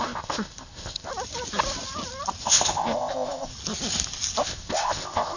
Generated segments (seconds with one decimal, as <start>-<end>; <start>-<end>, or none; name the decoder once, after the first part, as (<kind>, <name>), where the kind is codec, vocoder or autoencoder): 0.0-1.1 (codec, ZipCodec); 2.4-3.5; 4.4-5.4

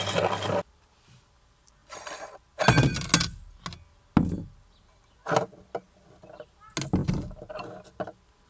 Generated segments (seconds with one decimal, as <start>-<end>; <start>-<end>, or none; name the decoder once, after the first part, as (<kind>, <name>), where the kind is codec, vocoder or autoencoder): none